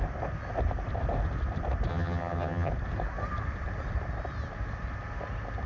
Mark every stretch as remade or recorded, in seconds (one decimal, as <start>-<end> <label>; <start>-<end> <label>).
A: 0.0-1.9 recorded; 1.9-2.7 remade; 2.7-5.7 recorded